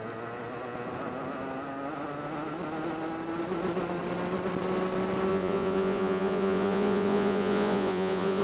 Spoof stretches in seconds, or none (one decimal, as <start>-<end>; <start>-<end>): 5.3-8.4